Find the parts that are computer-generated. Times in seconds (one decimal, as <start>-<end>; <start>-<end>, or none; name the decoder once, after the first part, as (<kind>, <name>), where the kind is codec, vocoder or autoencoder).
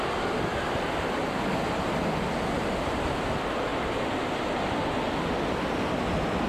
none